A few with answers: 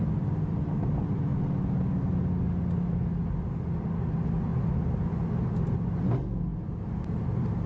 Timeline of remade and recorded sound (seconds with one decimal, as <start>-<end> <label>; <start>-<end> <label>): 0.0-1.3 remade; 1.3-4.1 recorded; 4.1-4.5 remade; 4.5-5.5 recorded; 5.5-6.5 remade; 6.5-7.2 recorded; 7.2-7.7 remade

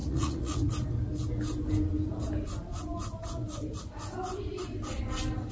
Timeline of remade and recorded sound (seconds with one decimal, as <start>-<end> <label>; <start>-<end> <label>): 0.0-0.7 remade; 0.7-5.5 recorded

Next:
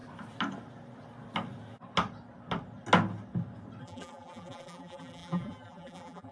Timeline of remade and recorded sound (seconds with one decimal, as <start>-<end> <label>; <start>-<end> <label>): 0.0-3.8 recorded; 3.8-6.3 remade